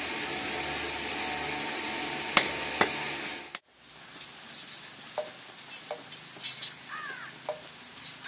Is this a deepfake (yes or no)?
no